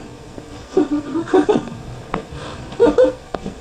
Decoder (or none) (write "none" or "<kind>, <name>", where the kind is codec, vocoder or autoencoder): codec, SNAC